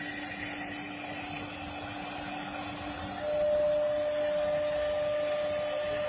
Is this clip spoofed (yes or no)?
no